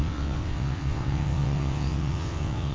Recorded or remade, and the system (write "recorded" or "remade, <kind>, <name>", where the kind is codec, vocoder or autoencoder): remade, vocoder, WaveNeXt